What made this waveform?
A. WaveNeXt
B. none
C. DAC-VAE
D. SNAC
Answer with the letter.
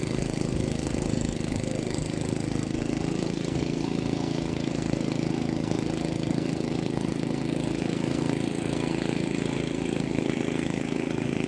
D